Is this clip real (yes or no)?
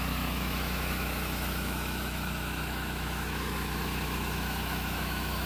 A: no